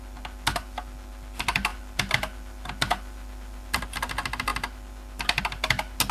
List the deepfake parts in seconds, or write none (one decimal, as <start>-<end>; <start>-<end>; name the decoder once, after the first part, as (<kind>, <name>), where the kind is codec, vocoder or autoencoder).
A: none